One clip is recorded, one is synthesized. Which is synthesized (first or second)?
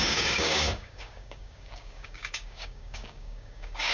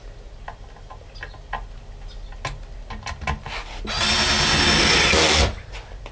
first